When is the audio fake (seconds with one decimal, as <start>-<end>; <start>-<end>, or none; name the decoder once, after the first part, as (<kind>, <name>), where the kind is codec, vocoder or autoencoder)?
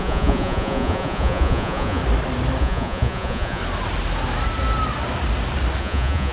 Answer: 0.0-2.0 (vocoder, Vocos); 2.6-3.6; 5.8-6.3